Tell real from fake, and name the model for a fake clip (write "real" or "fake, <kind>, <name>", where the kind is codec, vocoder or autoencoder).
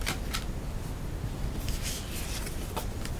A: real